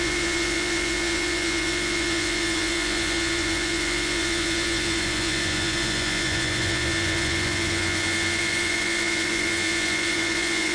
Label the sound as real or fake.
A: fake